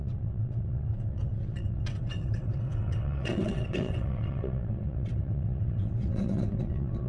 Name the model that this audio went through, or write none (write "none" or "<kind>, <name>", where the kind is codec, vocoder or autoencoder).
vocoder, WaveNeXt